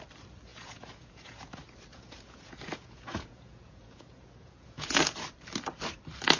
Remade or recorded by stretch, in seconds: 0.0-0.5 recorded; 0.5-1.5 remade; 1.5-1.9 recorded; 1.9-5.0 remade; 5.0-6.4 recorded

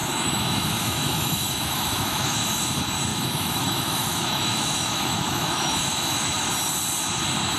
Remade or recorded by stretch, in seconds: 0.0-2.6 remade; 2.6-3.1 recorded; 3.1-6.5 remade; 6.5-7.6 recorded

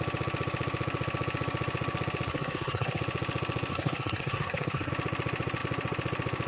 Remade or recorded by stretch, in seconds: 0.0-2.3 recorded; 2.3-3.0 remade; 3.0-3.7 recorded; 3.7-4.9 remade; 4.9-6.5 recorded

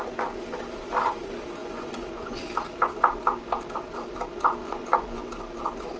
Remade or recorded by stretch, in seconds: 0.0-1.6 recorded; 1.6-2.4 remade; 2.4-4.6 recorded; 4.6-5.2 remade; 5.2-6.0 recorded

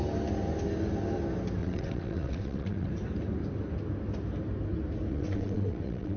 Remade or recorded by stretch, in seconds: 0.0-1.6 recorded; 1.6-2.9 remade; 2.9-5.1 recorded; 5.1-6.2 remade

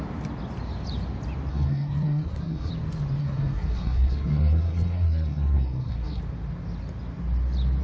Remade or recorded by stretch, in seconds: 0.0-1.5 recorded; 1.5-2.7 remade; 2.7-3.2 recorded; 3.2-6.2 remade; 6.2-7.8 recorded

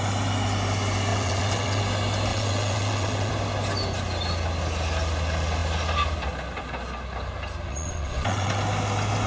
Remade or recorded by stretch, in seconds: 0.0-1.1 recorded; 1.1-1.8 remade; 1.8-2.3 recorded; 2.3-3.3 remade; 3.3-7.7 recorded; 7.7-8.6 remade; 8.6-9.3 recorded

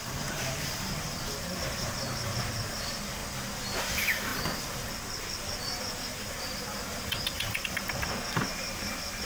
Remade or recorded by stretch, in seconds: 0.0-3.2 remade; 3.2-3.8 recorded; 3.8-4.3 remade; 4.3-5.8 recorded; 5.8-9.3 remade